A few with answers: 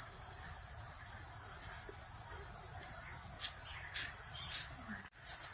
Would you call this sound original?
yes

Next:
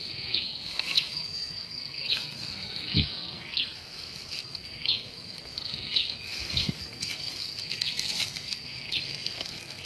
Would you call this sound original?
no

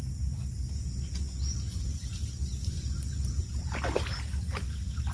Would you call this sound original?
yes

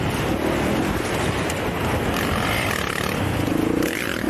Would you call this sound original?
yes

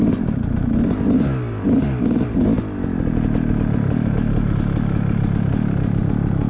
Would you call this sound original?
yes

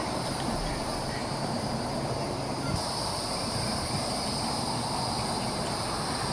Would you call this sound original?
no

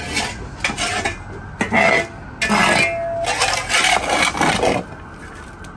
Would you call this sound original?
yes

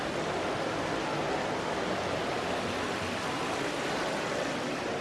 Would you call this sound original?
yes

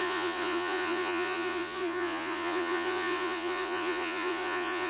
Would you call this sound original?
no